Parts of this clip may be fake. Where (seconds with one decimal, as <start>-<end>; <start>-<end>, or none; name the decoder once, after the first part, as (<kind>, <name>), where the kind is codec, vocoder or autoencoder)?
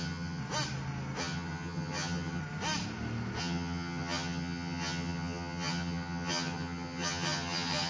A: 0.0-0.4 (vocoder, HiFi-GAN); 1.2-2.4; 3.4-7.9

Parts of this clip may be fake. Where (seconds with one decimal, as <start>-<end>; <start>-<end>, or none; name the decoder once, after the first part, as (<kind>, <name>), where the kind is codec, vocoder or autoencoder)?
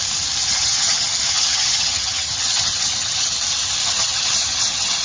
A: 0.4-3.4 (vocoder, HiFi-GAN); 3.8-5.0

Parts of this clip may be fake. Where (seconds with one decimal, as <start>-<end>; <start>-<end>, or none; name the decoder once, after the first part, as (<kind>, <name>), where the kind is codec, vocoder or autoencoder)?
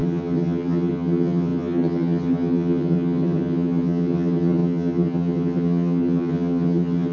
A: 0.0-7.1 (vocoder, HiFi-GAN)